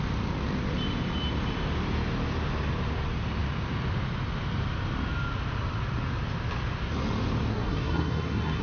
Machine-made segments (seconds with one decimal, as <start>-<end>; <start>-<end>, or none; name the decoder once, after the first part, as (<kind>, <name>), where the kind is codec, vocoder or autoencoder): 7.5-8.6 (codec, SNAC)